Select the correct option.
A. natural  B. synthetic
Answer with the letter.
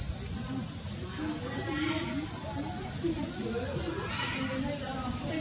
A